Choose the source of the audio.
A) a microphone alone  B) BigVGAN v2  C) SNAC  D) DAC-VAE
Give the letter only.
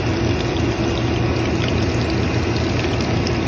A